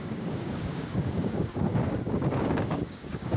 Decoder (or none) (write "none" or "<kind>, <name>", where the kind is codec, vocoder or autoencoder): codec, DAC